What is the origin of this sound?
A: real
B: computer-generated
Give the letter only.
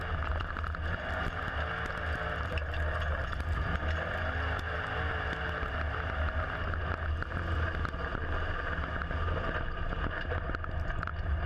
A